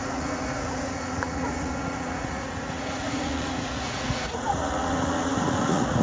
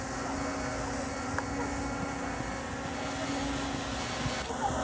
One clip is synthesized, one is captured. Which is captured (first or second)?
second